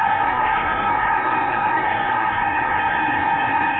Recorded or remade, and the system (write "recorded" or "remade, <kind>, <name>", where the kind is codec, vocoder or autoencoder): remade, codec, SNAC